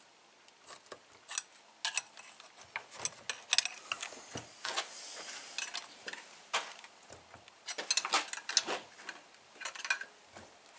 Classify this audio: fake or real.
real